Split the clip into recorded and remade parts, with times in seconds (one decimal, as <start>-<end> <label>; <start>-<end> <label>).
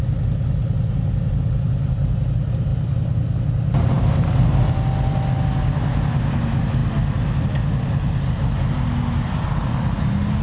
0.0-0.6 recorded; 0.6-2.2 remade; 2.2-10.4 recorded